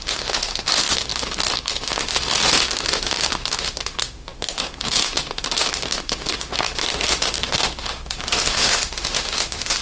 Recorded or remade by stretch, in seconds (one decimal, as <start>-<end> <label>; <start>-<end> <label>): 0.0-9.8 remade